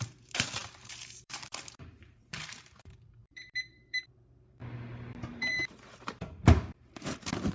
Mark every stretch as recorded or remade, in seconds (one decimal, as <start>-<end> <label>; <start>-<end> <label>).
0.0-4.6 remade; 4.6-5.3 recorded; 5.3-7.5 remade